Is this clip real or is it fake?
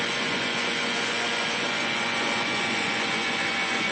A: fake